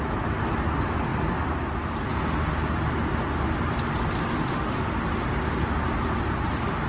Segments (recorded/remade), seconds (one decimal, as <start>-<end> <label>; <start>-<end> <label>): 0.0-4.2 recorded; 4.2-4.9 remade; 4.9-6.9 recorded